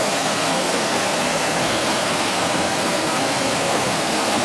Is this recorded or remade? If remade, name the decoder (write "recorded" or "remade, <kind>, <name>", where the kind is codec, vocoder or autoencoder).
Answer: remade, codec, SNAC